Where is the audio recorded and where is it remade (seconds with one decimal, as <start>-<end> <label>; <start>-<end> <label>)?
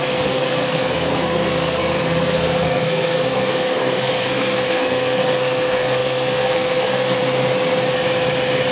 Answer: 0.0-7.2 remade; 7.2-8.7 recorded